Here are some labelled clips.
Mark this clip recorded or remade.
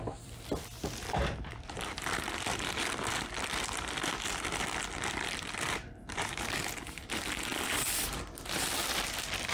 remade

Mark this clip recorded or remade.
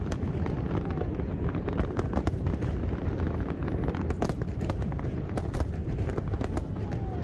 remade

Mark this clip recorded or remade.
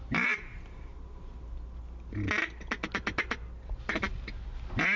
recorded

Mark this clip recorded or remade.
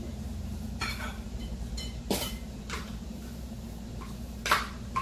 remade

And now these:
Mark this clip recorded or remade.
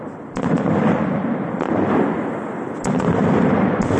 recorded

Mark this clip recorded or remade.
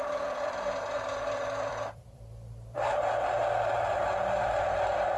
remade